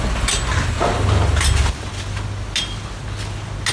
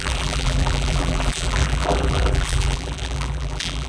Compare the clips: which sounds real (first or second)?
first